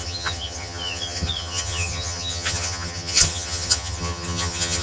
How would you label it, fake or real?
fake